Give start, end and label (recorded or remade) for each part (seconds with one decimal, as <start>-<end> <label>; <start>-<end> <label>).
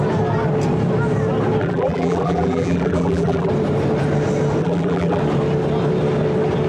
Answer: 0.0-1.6 recorded; 1.6-3.5 remade; 3.5-4.6 recorded; 4.6-5.2 remade; 5.2-6.7 recorded